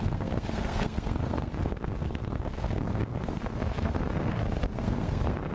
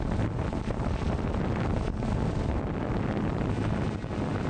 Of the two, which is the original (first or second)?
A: second